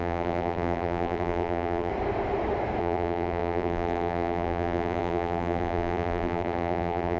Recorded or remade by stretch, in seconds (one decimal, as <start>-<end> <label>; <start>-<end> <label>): 0.0-1.9 remade; 1.9-2.8 recorded; 2.8-7.2 remade